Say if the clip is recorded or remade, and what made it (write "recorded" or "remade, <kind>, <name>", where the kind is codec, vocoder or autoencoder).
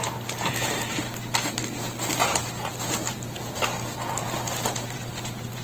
recorded